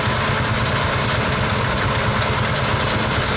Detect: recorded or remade recorded